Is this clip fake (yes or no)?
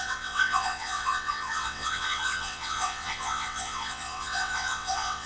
yes